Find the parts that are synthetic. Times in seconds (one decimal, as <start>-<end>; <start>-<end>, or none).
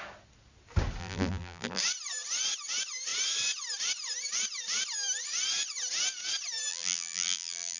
1.0-1.8; 6.7-7.8